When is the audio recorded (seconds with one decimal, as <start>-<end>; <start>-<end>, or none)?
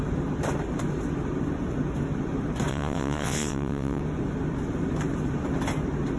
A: 0.0-2.7; 4.0-6.2